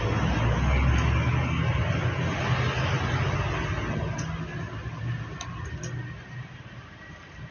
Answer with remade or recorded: recorded